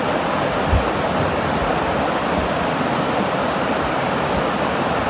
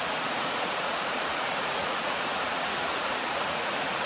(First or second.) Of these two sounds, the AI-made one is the second